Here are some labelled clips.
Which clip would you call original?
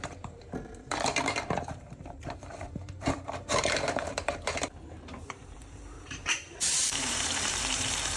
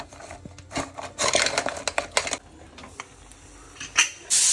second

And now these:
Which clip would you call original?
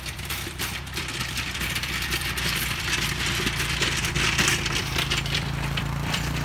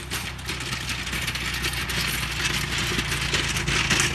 second